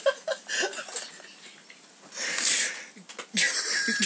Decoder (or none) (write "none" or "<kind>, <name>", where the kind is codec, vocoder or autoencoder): none